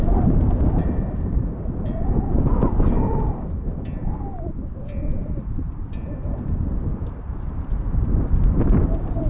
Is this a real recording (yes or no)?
no